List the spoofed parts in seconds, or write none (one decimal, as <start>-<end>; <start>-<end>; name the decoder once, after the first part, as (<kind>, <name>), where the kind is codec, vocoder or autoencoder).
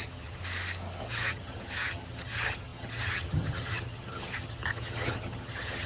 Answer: 0.0-0.4 (vocoder, HiFi-GAN); 1.0-5.9